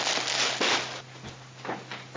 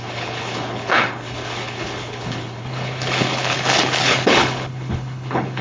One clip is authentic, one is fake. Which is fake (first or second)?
second